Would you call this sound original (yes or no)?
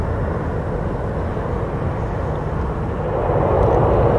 yes